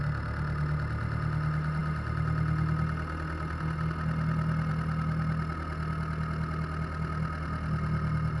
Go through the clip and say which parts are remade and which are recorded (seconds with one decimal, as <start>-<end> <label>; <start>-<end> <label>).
0.0-8.4 recorded